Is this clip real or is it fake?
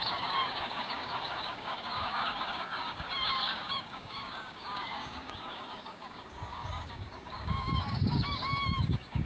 fake